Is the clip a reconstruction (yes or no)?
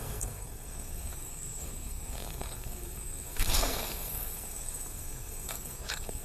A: yes